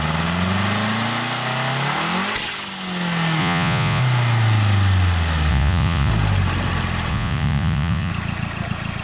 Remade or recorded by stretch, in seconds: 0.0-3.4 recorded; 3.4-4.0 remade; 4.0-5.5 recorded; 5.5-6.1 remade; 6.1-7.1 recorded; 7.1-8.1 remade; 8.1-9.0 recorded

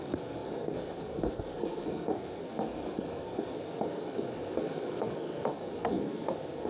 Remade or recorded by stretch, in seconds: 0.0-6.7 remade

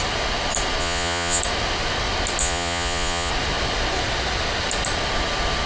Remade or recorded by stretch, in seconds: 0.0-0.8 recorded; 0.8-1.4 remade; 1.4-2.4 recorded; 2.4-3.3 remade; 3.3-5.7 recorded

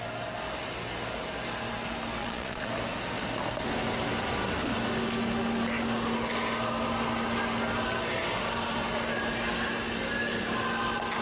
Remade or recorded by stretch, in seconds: 0.0-2.2 recorded; 2.2-2.7 remade; 2.7-11.2 recorded

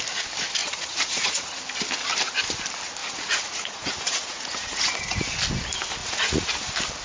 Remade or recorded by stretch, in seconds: 0.0-0.6 recorded; 0.6-1.6 remade; 1.6-3.0 recorded; 3.0-5.2 remade; 5.2-6.0 recorded; 6.0-6.6 remade; 6.6-7.0 recorded